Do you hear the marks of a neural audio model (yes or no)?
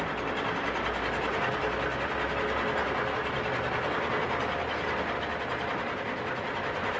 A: no